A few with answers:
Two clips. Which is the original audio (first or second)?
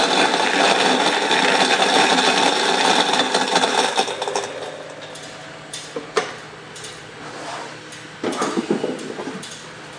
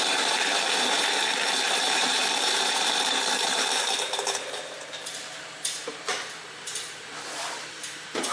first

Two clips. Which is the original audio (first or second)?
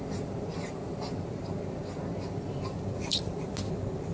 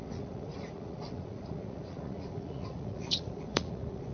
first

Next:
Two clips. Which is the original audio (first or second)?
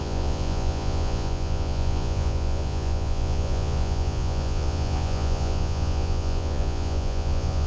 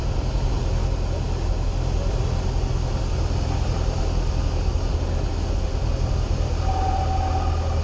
second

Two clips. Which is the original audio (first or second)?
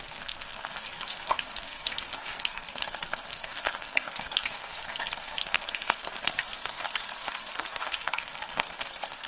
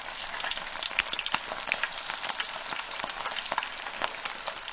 second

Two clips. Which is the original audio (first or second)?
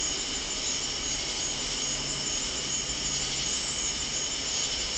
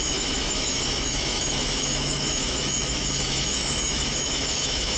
first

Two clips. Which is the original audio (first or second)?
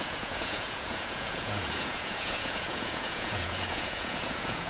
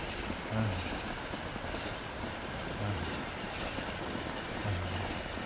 second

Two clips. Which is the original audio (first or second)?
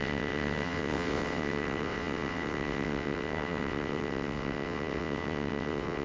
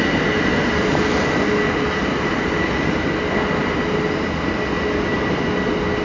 second